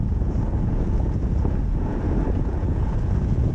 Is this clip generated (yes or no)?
yes